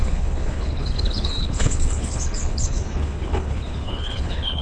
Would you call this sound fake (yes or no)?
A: yes